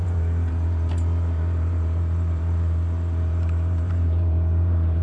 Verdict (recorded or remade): remade